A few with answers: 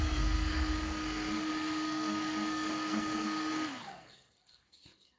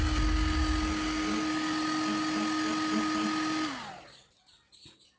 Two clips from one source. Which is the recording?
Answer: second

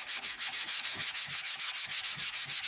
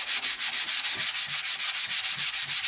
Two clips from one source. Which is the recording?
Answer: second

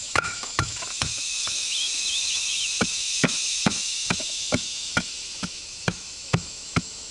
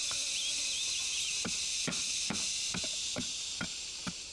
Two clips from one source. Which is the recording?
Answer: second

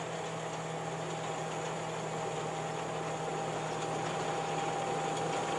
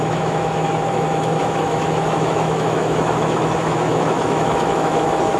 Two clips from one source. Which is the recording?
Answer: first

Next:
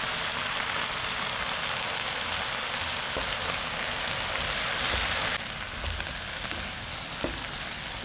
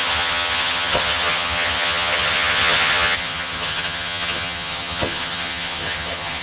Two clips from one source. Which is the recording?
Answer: first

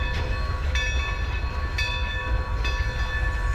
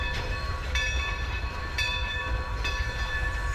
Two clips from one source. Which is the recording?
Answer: first